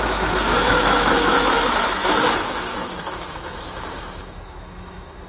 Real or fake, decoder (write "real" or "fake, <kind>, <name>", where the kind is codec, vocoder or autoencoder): fake, autoencoder, DAC-VAE